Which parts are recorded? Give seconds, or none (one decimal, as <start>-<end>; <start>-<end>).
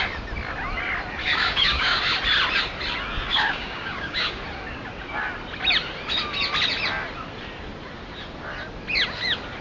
0.0-1.2; 2.0-3.3; 4.4-9.6